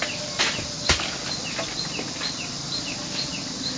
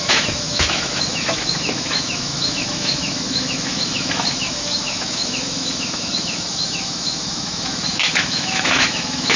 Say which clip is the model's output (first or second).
second